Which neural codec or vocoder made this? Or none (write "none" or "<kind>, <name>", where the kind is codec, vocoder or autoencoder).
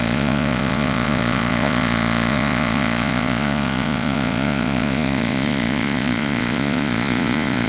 vocoder, Vocos